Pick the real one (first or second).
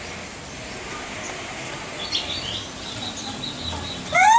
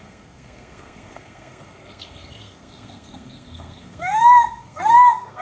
first